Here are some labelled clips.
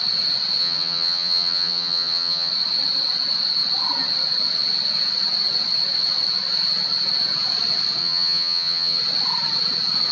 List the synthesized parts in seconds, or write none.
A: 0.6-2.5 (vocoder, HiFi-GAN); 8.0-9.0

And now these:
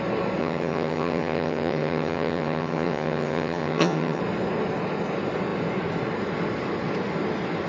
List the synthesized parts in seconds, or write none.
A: 0.4-4.2 (vocoder, HiFi-GAN)